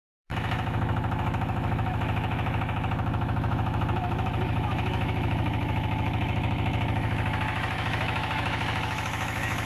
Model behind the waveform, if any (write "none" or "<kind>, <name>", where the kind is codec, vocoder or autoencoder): autoencoder, DAC-VAE